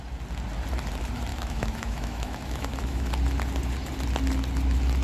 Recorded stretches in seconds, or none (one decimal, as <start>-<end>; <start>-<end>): 0.0-1.3; 3.1-5.0